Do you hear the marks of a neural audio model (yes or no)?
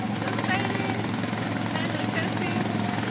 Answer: no